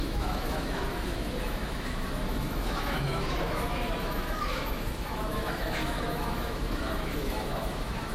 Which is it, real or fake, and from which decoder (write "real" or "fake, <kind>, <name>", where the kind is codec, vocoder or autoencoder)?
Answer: fake, autoencoder, DAC-VAE